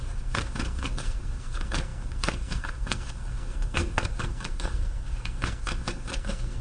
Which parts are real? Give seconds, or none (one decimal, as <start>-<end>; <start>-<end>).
none